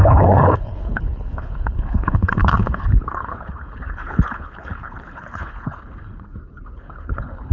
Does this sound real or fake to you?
fake